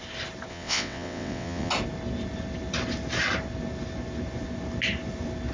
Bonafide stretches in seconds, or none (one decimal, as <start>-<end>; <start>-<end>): 0.0-0.5; 1.7-5.5